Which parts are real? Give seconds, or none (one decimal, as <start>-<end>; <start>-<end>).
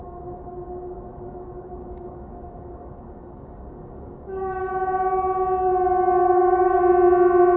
4.7-6.2; 6.8-7.6